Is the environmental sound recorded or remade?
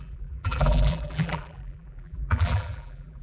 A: remade